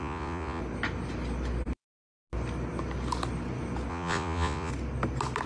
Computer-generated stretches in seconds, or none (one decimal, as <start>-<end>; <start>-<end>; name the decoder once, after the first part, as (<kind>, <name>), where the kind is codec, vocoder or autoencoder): 0.0-0.6 (vocoder, Vocos); 3.9-4.7